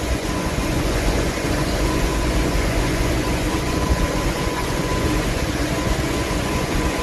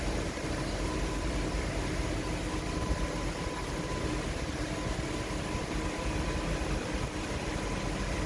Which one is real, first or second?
second